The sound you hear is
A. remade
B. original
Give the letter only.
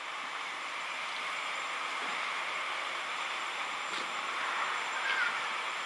A